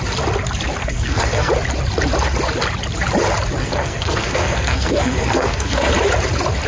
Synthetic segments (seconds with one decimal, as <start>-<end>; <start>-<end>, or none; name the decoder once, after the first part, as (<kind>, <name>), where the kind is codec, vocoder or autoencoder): 0.8-1.5 (codec, SNAC); 3.6-5.9

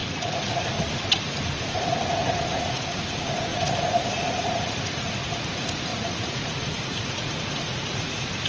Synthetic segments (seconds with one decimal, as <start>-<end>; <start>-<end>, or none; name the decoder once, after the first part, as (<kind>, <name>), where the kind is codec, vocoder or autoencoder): 0.0-8.5 (vocoder, Vocos)

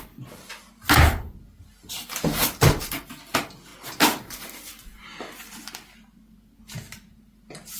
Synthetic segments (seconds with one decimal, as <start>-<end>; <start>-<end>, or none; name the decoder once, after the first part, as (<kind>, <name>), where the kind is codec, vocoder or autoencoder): none